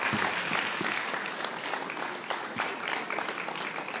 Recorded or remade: recorded